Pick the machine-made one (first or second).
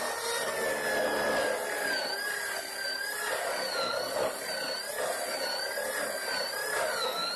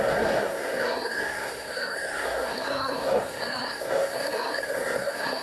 second